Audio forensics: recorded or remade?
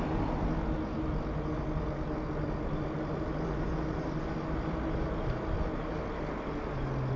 recorded